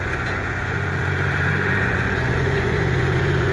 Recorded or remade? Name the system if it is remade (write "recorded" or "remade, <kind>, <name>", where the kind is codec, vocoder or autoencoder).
remade, vocoder, Vocos